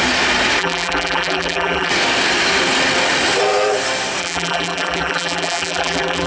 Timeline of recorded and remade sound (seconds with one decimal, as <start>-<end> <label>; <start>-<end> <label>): 0.0-0.6 recorded; 0.6-1.9 remade; 1.9-4.2 recorded; 4.2-6.3 remade